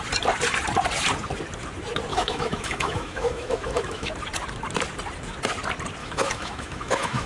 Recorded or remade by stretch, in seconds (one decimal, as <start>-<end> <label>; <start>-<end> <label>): 0.0-2.1 recorded; 2.1-4.1 remade; 4.1-6.0 recorded; 6.0-7.3 remade